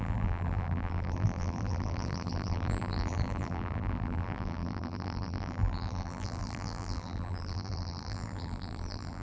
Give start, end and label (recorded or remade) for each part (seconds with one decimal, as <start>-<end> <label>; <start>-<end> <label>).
0.0-9.2 remade